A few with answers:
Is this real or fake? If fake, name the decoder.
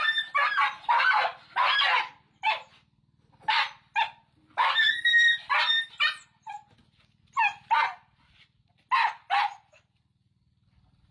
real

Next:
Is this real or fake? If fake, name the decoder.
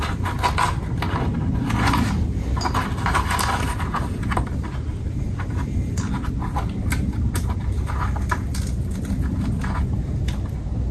real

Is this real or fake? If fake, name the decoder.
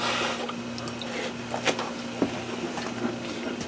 real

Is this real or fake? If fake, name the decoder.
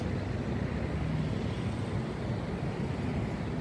real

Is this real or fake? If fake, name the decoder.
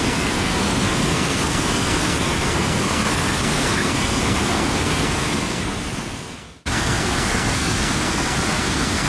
fake, codec, SNAC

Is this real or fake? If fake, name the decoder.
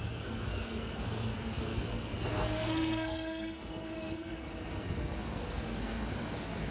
fake, codec, SNAC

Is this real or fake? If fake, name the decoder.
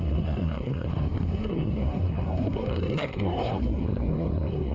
fake, codec, SNAC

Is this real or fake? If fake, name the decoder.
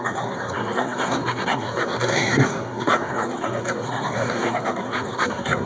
fake, codec, SNAC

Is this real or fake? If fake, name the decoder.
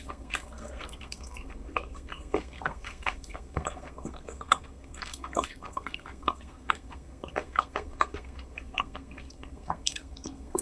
fake, codec, SNAC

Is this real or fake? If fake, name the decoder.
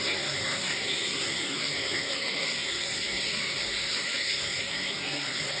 fake, codec, SNAC